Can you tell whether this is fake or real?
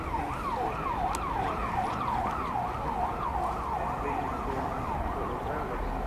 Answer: real